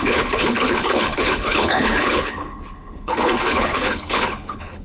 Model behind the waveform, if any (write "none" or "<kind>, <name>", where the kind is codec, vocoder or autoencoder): codec, HILCodec